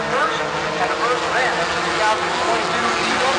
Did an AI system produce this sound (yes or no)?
no